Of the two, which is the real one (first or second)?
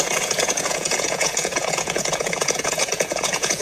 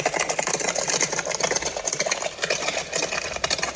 second